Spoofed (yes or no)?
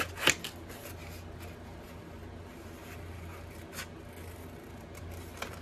no